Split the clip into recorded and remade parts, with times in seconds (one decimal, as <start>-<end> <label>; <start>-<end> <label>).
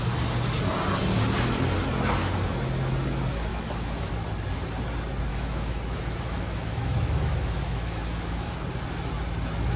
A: 0.0-3.5 recorded; 3.5-4.1 remade; 4.1-5.3 recorded; 5.3-8.6 remade; 8.6-9.8 recorded